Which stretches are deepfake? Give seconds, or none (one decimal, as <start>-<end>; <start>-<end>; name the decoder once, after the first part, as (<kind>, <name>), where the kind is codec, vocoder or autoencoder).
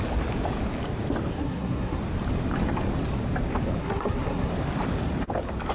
1.3-2.0 (codec, SNAC); 3.8-4.5